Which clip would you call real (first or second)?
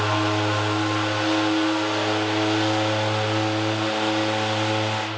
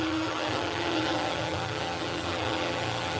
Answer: first